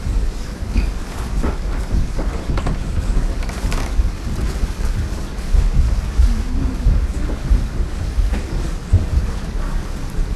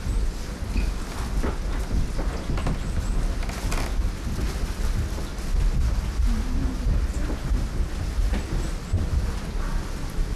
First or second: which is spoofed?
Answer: first